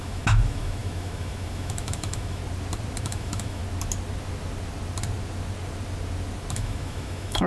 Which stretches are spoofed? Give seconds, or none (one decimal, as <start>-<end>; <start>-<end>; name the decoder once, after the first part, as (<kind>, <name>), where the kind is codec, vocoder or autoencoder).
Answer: 0.0-2.4 (autoencoder, DAC-VAE); 3.0-3.6; 6.5-7.5